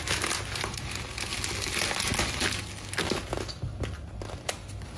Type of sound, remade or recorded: recorded